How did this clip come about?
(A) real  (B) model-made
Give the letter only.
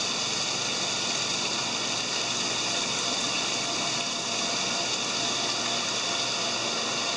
A